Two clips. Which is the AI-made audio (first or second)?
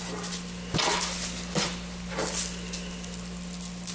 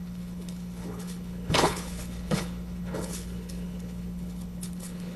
second